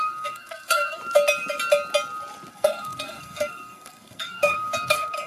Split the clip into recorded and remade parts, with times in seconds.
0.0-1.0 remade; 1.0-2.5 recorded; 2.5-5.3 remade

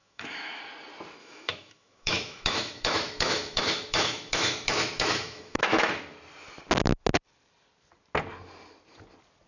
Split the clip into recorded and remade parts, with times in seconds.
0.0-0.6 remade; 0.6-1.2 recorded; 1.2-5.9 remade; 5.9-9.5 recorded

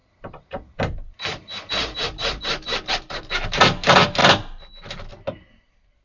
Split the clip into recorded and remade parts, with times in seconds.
0.0-6.0 recorded

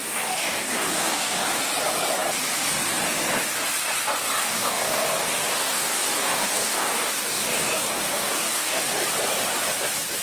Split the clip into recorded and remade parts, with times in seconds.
0.0-1.6 remade; 1.6-4.4 recorded; 4.4-8.8 remade; 8.8-10.2 recorded

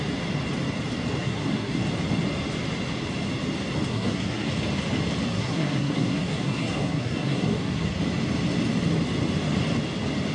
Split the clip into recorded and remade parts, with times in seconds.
0.0-1.2 recorded; 1.2-1.8 remade; 1.8-3.9 recorded; 3.9-4.5 remade; 4.5-5.3 recorded; 5.3-8.0 remade; 8.0-10.3 recorded

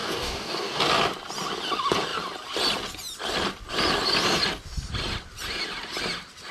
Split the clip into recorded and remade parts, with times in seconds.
0.0-0.8 remade; 0.8-6.5 recorded

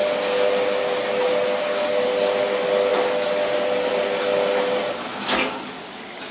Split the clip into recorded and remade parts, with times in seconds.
0.0-0.8 remade; 0.8-2.9 recorded; 2.9-3.9 remade; 3.9-6.3 recorded